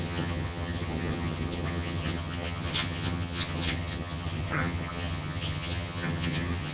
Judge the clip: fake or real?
fake